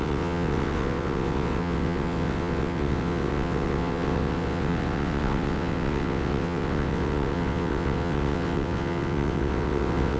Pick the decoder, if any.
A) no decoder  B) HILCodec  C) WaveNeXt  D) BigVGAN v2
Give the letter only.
C